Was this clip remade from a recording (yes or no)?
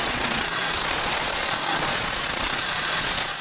yes